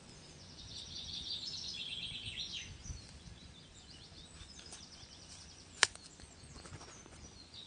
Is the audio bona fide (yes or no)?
no